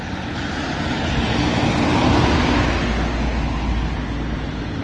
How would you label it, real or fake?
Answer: real